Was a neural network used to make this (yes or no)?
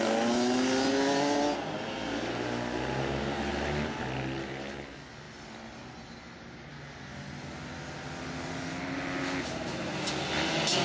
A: no